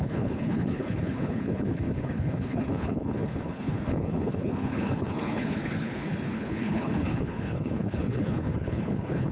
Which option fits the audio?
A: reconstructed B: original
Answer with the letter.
A